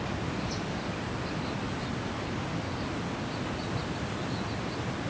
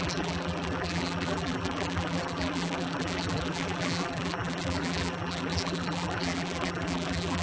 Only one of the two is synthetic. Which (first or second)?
second